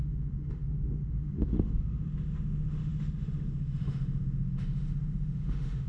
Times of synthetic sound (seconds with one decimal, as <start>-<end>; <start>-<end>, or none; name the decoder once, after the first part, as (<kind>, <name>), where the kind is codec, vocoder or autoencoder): 0.0-5.9 (autoencoder, DAC-VAE)